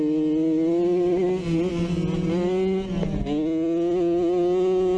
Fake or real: real